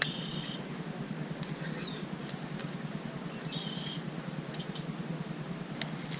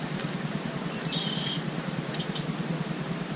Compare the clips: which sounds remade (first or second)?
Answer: second